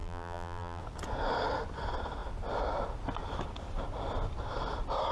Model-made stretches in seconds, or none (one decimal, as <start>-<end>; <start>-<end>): 0.0-0.8